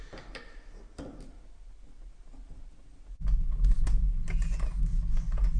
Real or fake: real